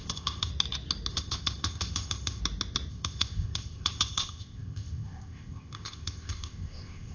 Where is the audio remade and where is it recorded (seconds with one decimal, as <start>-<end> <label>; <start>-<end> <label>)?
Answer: 0.0-0.5 remade; 0.5-1.1 recorded; 1.1-2.4 remade; 2.4-2.9 recorded; 2.9-7.1 remade